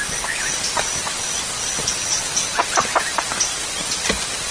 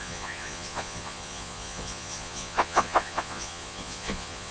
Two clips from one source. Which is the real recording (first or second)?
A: first